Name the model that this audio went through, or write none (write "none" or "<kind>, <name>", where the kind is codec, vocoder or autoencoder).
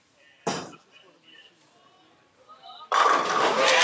none